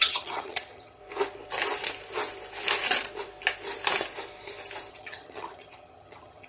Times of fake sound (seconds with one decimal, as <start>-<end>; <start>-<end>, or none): 0.0-1.0; 4.9-6.5